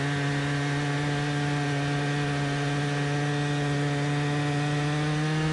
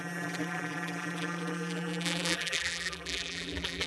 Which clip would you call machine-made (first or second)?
second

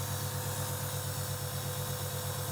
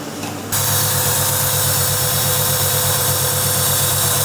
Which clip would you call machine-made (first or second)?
second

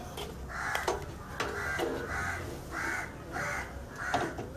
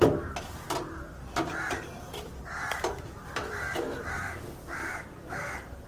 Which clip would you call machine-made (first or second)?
second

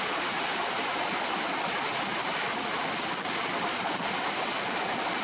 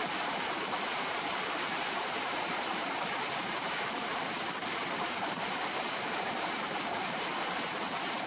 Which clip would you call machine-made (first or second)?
second